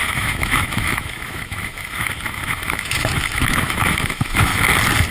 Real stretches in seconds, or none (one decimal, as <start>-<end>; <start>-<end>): 4.5-5.1